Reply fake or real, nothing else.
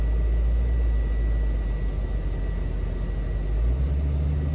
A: real